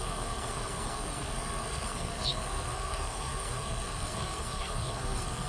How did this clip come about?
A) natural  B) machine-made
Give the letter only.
B